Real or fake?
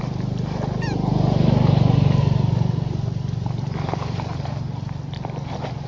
real